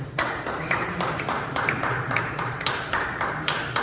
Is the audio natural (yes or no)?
no